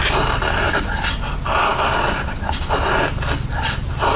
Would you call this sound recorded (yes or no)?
yes